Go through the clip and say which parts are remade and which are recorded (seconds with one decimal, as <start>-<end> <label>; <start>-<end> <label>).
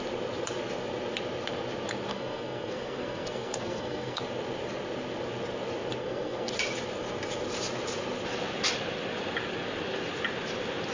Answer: 0.0-2.1 recorded; 2.1-4.2 remade; 4.2-6.0 recorded; 6.0-6.5 remade; 6.5-10.9 recorded